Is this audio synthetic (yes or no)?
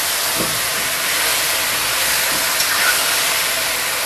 no